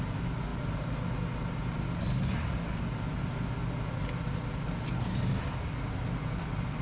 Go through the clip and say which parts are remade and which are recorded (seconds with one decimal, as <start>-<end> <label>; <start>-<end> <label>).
0.0-6.8 recorded